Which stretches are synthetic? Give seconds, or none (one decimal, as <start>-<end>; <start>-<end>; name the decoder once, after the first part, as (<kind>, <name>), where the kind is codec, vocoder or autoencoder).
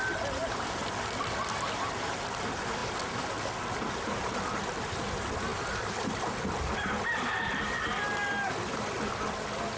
none